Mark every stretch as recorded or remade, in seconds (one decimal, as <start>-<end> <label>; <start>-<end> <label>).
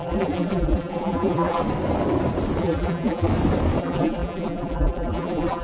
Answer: 0.0-1.6 remade; 1.6-2.6 recorded; 2.6-3.3 remade; 3.3-3.8 recorded; 3.8-5.6 remade